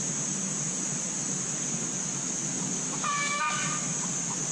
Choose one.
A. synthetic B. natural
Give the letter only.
B